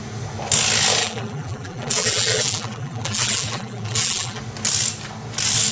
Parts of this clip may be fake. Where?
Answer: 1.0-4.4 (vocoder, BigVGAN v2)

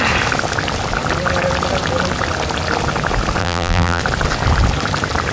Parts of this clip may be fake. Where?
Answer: 3.4-4.0 (vocoder, BigVGAN v2)

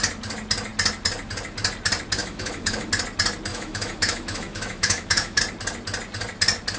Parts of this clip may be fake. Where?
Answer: 2.2-2.9 (autoencoder, DAC-VAE); 3.5-5.4

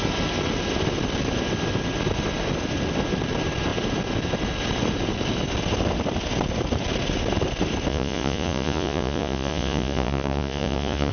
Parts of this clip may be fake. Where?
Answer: 7.9-11.1 (vocoder, Vocos)

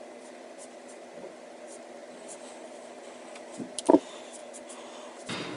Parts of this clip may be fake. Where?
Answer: none